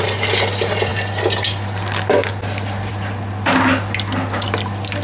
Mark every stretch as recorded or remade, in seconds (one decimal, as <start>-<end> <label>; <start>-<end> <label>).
0.0-5.0 recorded